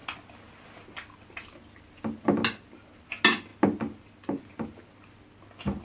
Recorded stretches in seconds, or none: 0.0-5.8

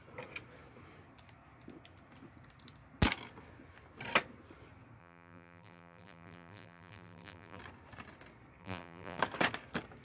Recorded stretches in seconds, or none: 0.0-5.0; 7.6-8.6; 9.2-10.0

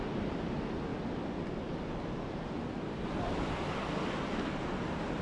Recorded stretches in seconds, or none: 0.0-5.2

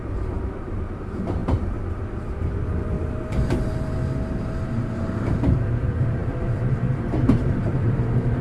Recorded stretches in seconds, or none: 4.0-4.8